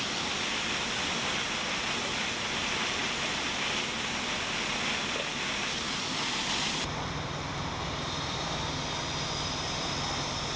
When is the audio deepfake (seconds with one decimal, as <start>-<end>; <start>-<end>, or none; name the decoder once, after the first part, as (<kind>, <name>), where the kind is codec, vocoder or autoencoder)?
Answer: 0.0-3.0 (vocoder, BigVGAN v2); 5.3-10.6